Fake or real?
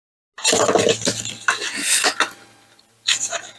real